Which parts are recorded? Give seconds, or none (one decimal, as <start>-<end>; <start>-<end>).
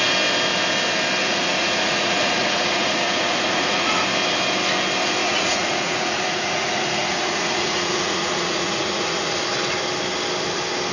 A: 0.0-1.2; 4.0-5.2; 9.4-10.9